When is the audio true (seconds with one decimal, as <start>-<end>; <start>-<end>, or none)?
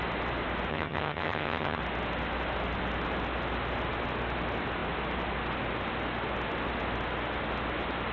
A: 0.0-0.7; 1.8-8.1